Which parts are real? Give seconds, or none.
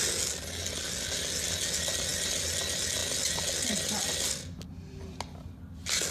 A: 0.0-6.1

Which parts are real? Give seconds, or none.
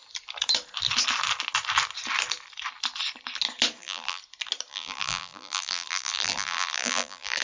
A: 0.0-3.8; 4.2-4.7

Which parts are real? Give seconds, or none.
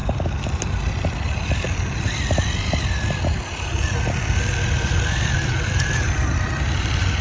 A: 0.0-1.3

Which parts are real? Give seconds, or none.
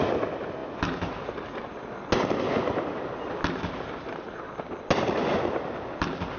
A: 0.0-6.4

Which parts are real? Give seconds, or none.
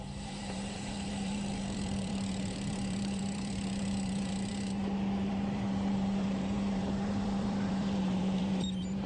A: 4.8-5.3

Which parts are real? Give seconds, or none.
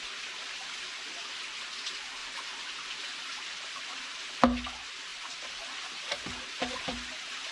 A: 0.6-1.3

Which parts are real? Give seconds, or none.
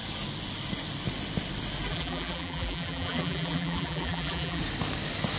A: 0.0-1.9; 4.6-5.4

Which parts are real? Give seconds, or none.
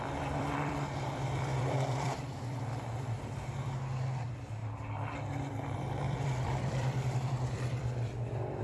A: 4.6-5.3